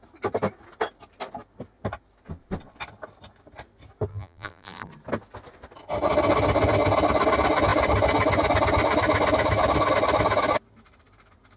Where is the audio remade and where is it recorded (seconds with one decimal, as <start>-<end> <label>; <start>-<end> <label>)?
0.0-4.1 recorded; 4.1-4.9 remade; 4.9-11.6 recorded